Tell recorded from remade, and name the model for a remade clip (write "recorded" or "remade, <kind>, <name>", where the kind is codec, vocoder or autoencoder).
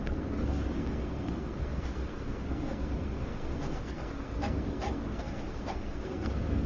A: remade, codec, SNAC